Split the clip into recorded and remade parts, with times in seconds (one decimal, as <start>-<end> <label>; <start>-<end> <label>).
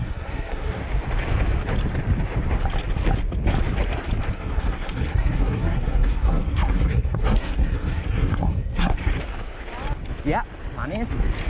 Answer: 0.0-0.8 remade; 0.8-4.3 recorded; 4.3-9.1 remade; 9.1-11.5 recorded